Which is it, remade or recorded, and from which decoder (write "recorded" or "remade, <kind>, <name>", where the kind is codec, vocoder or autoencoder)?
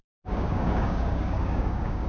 remade, codec, DAC